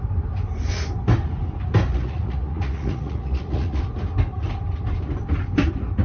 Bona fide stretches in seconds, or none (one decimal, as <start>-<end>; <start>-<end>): 0.0-1.9; 3.8-6.0